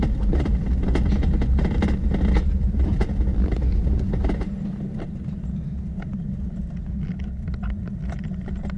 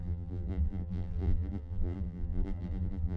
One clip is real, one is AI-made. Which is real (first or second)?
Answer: first